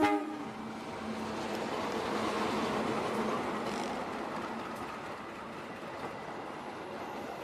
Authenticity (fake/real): real